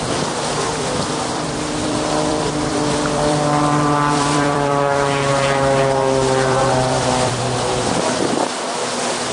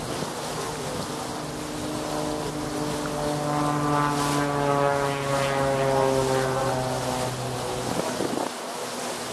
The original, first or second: second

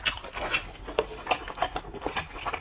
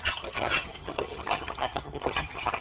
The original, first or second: first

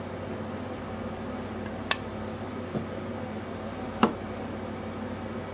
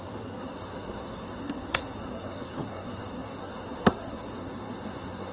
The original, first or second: first